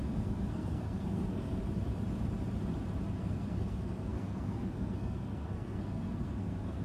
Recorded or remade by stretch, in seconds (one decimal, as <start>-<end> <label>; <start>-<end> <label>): 0.0-1.6 remade; 1.6-3.2 recorded; 3.2-6.8 remade